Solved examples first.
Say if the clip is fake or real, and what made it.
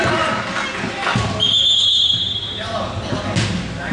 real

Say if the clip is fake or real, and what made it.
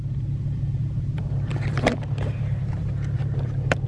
fake, vocoder, BigVGAN v2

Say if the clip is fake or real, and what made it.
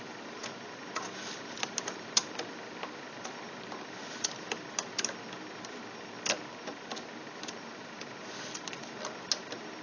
real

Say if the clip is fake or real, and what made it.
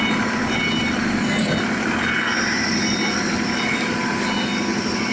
real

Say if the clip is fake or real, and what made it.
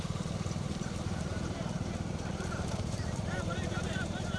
fake, vocoder, BigVGAN v2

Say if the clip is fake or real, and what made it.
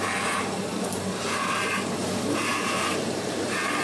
fake, vocoder, BigVGAN v2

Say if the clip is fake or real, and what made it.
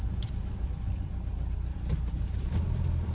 fake, vocoder, BigVGAN v2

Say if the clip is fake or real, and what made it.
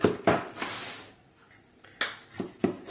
real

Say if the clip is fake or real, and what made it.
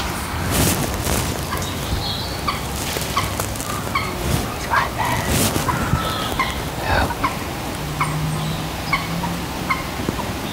real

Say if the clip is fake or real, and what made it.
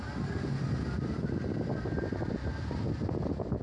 real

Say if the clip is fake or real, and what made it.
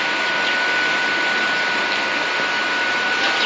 real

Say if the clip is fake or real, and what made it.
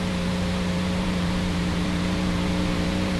fake, vocoder, BigVGAN v2